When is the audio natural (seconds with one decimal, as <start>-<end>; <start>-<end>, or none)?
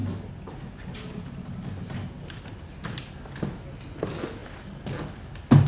0.0-5.7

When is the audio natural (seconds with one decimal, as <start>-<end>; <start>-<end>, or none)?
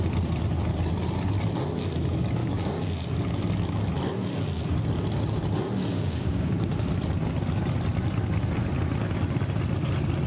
0.0-2.4; 2.9-5.9; 6.9-10.3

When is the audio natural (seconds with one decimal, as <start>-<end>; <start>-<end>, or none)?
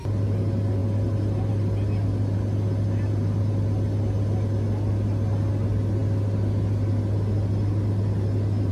0.0-8.7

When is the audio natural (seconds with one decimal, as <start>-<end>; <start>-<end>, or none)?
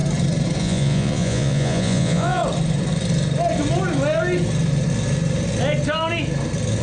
0.0-0.6; 2.4-6.8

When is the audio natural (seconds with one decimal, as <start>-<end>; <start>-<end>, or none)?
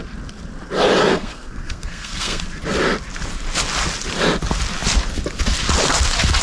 0.0-1.1; 2.4-6.4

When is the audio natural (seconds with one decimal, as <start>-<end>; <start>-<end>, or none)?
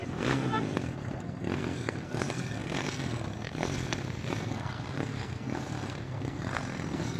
none